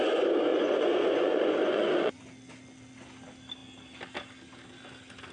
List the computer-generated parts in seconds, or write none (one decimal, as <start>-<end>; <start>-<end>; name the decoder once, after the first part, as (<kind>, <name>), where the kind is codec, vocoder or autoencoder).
0.5-2.2 (vocoder, Vocos)